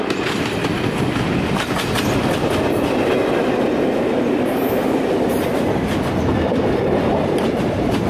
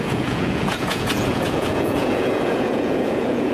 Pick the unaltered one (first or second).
first